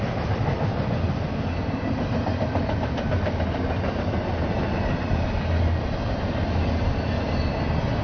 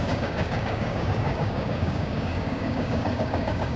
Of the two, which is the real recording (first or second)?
first